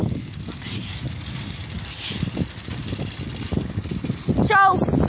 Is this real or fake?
real